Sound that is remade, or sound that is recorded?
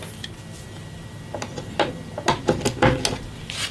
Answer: recorded